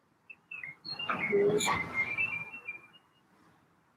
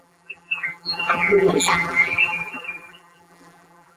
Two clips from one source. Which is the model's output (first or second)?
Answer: second